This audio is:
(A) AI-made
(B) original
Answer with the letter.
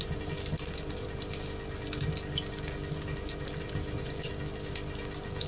B